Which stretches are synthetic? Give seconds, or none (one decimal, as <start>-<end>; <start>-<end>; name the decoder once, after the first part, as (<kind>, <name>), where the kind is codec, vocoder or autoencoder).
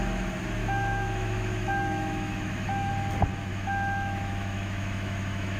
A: 0.6-2.9 (autoencoder, DAC-VAE); 3.5-5.6